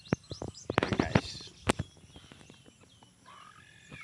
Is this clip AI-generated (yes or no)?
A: no